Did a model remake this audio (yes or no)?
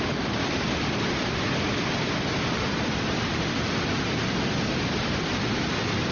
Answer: no